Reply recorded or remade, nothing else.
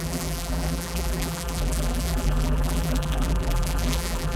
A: remade